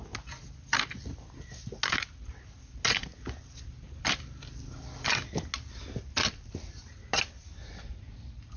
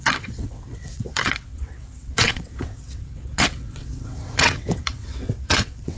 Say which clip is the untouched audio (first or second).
first